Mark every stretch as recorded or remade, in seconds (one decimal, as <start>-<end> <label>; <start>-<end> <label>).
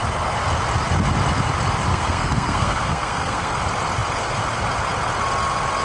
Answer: 0.0-1.9 recorded; 1.9-3.5 remade; 3.5-5.8 recorded